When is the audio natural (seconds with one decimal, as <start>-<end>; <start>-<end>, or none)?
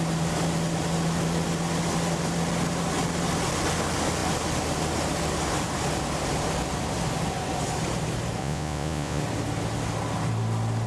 0.0-8.4; 9.2-10.9